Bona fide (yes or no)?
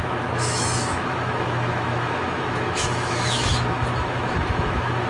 no